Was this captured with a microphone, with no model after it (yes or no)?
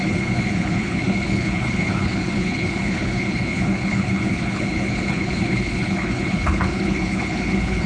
no